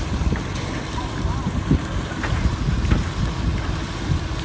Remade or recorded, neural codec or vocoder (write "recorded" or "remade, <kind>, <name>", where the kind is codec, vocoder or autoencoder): recorded